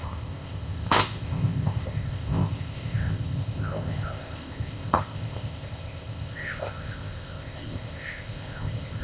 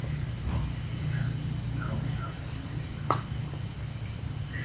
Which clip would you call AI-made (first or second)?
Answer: first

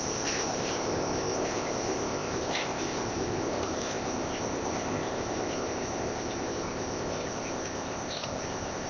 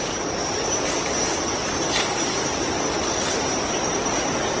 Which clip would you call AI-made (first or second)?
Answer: first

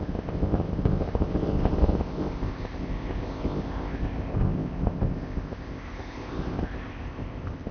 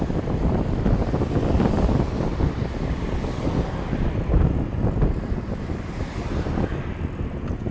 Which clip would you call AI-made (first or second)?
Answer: first